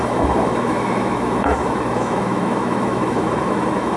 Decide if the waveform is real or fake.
fake